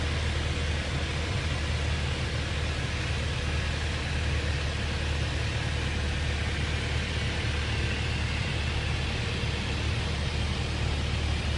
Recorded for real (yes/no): yes